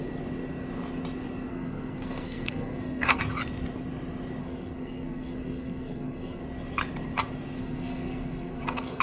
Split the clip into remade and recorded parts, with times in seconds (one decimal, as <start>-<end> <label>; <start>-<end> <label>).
0.0-1.5 recorded; 1.5-3.2 remade; 3.2-4.4 recorded; 4.4-6.4 remade; 6.4-7.6 recorded; 7.6-9.0 remade